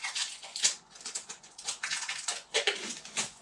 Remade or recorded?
remade